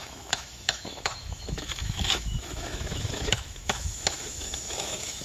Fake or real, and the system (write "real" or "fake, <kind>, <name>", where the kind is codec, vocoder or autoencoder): fake, autoencoder, DAC-VAE